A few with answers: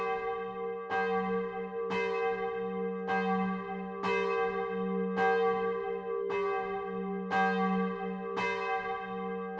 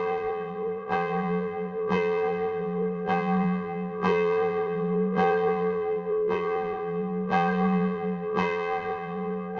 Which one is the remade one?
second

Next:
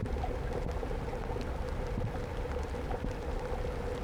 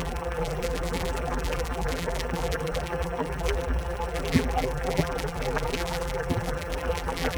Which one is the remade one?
second